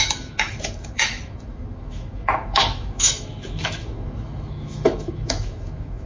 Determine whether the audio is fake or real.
fake